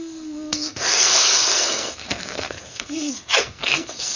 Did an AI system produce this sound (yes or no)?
yes